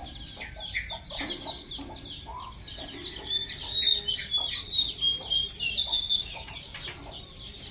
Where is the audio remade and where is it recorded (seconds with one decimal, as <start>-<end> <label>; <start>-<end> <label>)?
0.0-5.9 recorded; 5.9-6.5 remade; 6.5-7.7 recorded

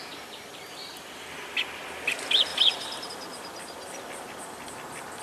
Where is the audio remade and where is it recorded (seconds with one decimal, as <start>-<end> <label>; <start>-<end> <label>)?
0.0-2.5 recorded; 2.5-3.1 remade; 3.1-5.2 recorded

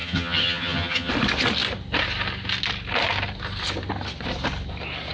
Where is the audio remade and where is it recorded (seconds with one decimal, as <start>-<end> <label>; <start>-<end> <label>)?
0.0-1.1 remade; 1.1-5.1 recorded

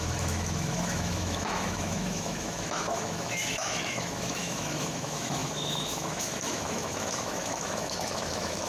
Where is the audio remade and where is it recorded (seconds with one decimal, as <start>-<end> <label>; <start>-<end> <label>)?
0.0-8.7 remade

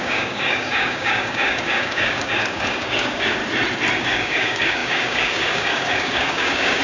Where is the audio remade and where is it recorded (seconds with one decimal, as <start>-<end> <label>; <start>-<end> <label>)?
0.0-3.4 remade; 3.4-4.0 recorded; 4.0-6.8 remade

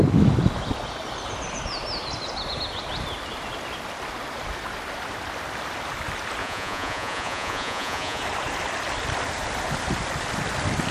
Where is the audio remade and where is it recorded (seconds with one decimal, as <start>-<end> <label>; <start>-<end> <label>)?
0.0-6.4 recorded; 6.4-8.2 remade; 8.2-10.9 recorded

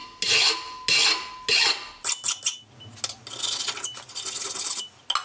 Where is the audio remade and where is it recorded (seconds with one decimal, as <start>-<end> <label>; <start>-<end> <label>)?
0.0-5.2 recorded

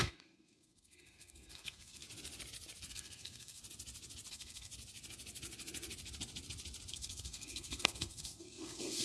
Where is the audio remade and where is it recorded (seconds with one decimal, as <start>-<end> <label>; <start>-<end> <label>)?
0.0-2.0 remade; 2.0-2.9 recorded; 2.9-3.6 remade; 3.6-4.3 recorded; 4.3-4.7 remade; 4.7-6.9 recorded; 6.9-9.0 remade